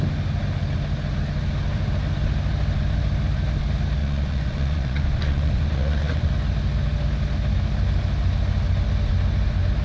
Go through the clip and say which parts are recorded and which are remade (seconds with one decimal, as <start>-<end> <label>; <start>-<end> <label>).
0.0-4.0 recorded; 4.0-6.3 remade; 6.3-9.8 recorded